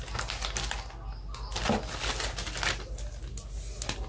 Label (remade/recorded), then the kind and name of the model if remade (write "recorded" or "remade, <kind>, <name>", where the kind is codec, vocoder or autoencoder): recorded